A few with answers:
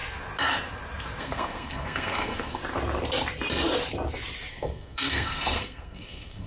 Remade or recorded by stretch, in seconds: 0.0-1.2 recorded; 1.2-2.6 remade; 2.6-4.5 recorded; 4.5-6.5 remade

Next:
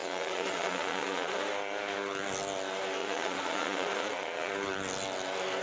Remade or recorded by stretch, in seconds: 0.0-1.4 remade; 1.4-3.0 recorded; 3.0-4.5 remade; 4.5-5.6 recorded

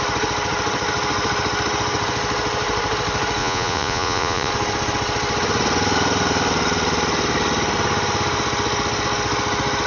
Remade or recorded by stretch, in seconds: 0.0-3.4 recorded; 3.4-4.5 remade; 4.5-9.9 recorded